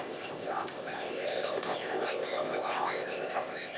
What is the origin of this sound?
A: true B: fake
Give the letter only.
B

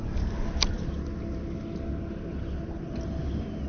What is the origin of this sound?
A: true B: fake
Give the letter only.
A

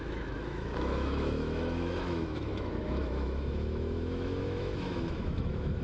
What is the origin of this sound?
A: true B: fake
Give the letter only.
B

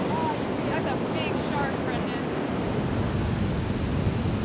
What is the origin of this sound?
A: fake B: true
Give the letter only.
B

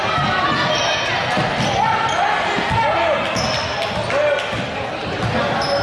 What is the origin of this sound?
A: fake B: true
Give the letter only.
B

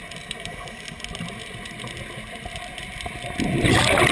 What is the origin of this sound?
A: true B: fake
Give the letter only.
A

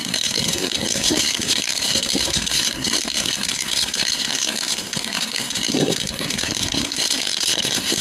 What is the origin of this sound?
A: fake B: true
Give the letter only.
A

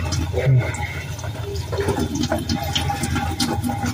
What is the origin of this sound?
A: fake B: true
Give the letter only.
B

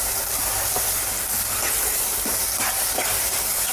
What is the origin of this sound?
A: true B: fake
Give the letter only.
A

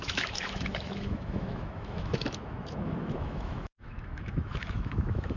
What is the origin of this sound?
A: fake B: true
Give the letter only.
A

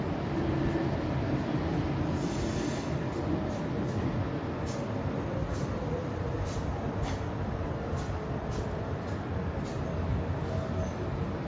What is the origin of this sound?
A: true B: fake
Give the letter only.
A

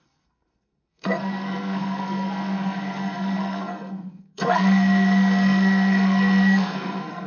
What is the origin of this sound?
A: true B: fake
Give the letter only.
B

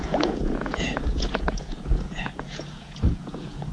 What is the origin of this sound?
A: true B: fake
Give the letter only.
B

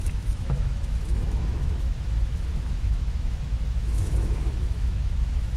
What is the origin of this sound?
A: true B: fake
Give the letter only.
B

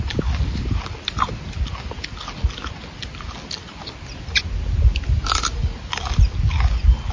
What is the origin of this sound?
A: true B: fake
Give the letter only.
A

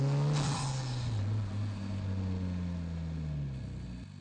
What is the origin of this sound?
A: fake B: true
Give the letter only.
B